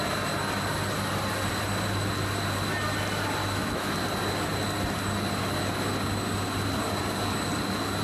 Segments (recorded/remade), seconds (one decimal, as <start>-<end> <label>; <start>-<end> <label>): 0.0-3.4 recorded; 3.4-3.9 remade; 3.9-8.0 recorded